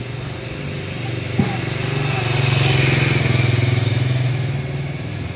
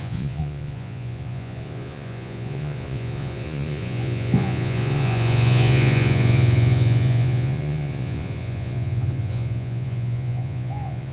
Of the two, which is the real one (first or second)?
first